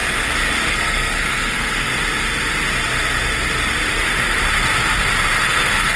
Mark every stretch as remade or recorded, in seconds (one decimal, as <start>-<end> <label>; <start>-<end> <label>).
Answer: 0.0-0.7 recorded; 0.7-1.9 remade; 1.9-5.5 recorded; 5.5-6.0 remade